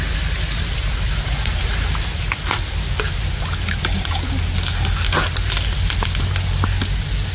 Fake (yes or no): no